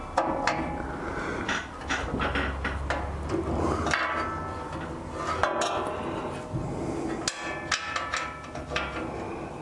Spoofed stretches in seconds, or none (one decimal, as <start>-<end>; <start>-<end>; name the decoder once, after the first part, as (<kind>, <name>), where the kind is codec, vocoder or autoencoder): none